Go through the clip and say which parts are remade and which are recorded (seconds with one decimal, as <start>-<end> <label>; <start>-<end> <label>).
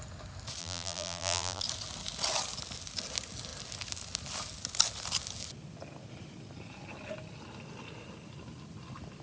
0.0-0.6 recorded; 0.6-1.6 remade; 1.6-9.2 recorded